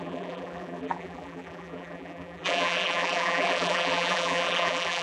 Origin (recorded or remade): remade